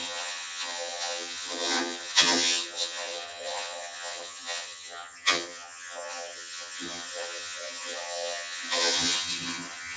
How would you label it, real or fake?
fake